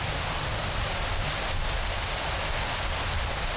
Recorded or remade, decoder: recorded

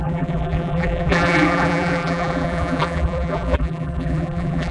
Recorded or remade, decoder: remade, vocoder, BigVGAN v2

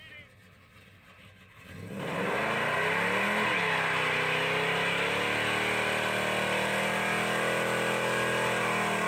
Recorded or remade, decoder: recorded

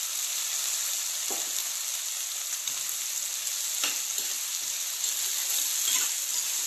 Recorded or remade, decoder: recorded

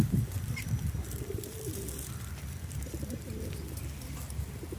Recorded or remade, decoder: remade, vocoder, BigVGAN v2